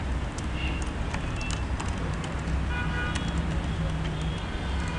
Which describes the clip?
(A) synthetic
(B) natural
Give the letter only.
B